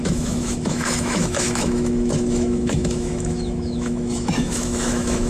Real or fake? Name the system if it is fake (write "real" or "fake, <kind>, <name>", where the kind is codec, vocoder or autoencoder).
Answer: fake, autoencoder, DAC-VAE